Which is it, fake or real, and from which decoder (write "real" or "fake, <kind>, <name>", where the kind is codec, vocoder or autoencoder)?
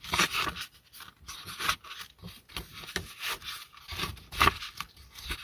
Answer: real